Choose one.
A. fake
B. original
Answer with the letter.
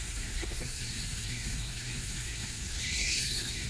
A